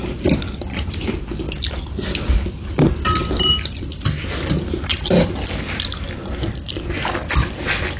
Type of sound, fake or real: real